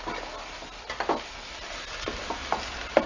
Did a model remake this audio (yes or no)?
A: no